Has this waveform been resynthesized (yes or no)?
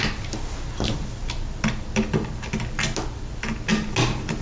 no